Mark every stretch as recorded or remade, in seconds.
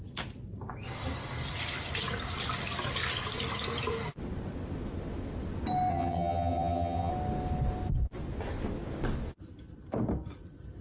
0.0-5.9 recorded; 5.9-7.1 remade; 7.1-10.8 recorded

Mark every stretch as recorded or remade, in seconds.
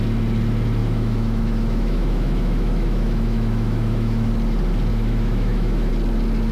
0.0-0.8 recorded; 0.8-4.3 remade; 4.3-4.9 recorded; 4.9-5.9 remade; 5.9-6.5 recorded